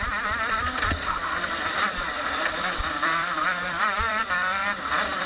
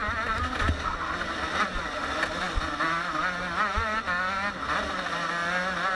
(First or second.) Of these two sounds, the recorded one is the second